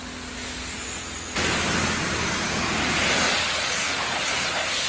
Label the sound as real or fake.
real